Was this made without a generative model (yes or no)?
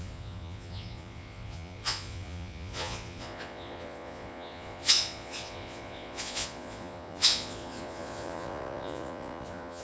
no